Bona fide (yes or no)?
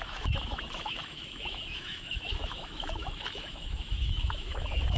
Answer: no